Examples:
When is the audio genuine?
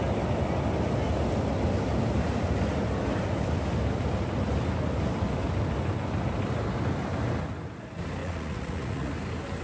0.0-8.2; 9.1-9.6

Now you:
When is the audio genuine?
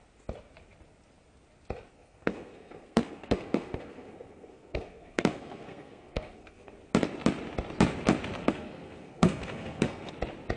0.0-1.9; 6.7-8.4; 10.1-10.6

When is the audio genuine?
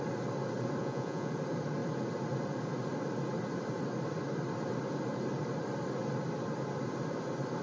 0.0-0.8; 1.3-7.6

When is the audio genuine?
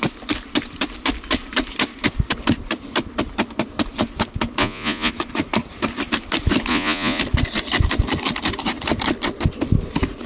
0.0-4.6; 5.1-6.7; 7.2-10.3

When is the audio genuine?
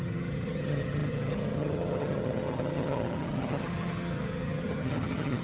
none